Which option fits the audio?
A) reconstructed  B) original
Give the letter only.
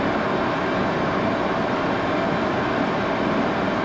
B